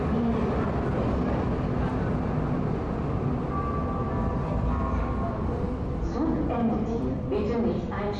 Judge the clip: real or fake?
real